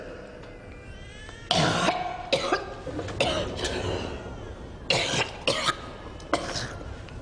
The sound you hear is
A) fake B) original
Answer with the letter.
B